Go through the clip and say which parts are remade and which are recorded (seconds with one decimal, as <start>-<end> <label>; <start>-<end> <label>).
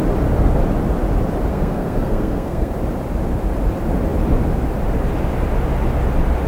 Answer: 0.0-1.5 recorded; 1.5-2.7 remade; 2.7-6.5 recorded